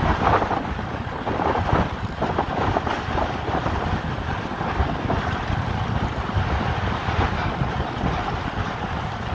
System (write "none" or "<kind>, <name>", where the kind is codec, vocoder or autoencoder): none